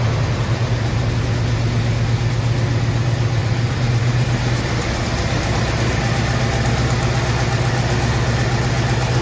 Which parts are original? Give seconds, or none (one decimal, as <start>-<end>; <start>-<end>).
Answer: 0.0-3.4; 6.0-9.2